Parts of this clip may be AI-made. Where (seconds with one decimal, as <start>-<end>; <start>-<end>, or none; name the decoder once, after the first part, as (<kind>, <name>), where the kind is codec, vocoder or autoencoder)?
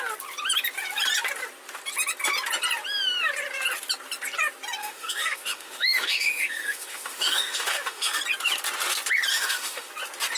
4.8-8.2 (autoencoder, DAC-VAE); 9.3-9.9